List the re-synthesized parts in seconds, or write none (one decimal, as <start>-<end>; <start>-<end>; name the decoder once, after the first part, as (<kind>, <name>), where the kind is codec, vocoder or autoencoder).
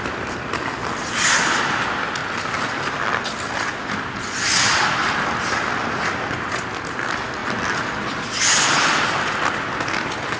none